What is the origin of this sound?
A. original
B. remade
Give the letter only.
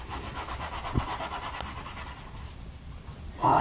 A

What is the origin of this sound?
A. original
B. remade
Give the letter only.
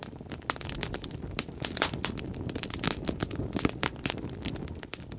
A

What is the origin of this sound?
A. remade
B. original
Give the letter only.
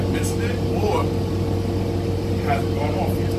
B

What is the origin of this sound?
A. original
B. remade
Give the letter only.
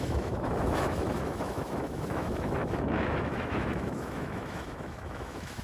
B